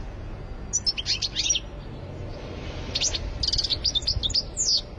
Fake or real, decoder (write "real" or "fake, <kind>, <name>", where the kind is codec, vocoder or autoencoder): real